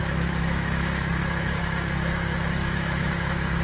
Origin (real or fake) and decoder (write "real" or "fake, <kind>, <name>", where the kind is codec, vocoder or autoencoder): fake, autoencoder, DAC-VAE